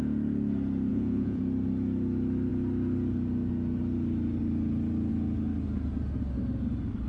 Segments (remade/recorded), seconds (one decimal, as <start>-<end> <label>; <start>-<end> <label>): 0.0-0.9 recorded; 0.9-1.4 remade; 1.4-7.1 recorded